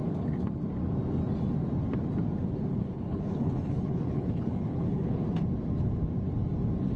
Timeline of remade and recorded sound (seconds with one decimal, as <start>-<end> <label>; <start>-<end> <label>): 0.0-2.7 recorded; 2.7-5.2 remade; 5.2-7.0 recorded